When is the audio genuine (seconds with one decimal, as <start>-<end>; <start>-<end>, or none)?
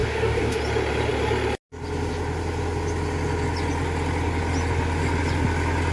0.6-5.9